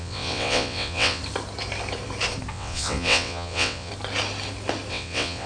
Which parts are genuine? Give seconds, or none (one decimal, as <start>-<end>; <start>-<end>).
1.2-2.5; 3.9-4.9